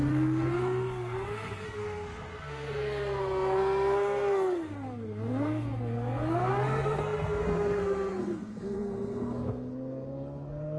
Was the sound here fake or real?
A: fake